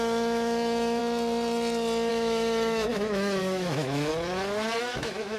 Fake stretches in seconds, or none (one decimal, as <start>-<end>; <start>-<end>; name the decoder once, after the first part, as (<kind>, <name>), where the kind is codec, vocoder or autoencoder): 0.0-1.0 (autoencoder, DAC-VAE); 2.1-4.1; 4.8-5.4